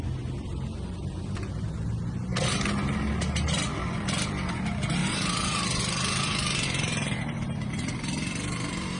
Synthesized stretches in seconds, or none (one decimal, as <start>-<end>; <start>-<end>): 5.0-5.8